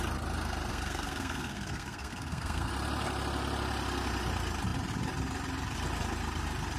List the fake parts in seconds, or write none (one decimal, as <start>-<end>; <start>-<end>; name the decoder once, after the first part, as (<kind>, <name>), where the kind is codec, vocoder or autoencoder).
0.7-2.7 (codec, SNAC)